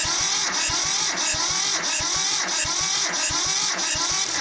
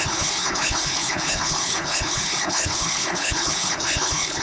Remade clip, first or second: second